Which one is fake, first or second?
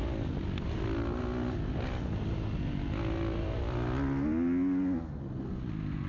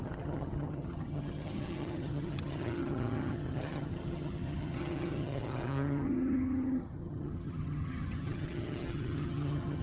second